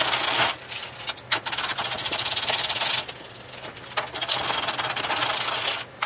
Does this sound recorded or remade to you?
recorded